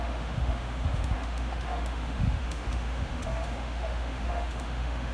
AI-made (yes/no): yes